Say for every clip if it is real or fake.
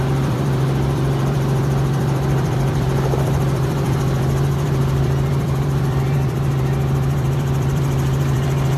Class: fake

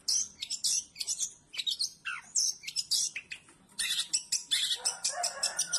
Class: fake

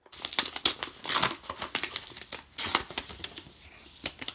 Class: real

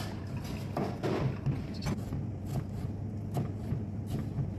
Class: real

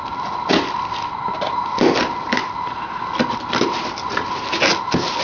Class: real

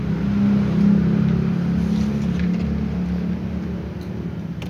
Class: real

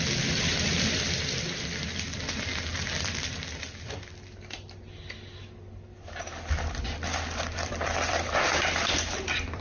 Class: fake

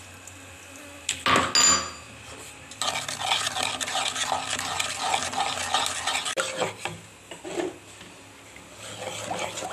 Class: real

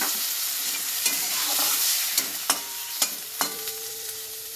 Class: fake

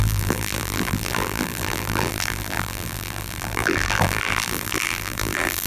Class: fake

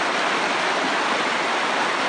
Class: real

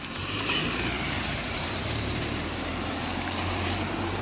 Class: fake